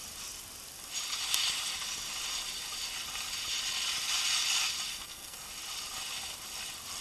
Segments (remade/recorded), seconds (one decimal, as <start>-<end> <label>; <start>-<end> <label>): 0.0-4.9 recorded; 4.9-5.5 remade; 5.5-7.0 recorded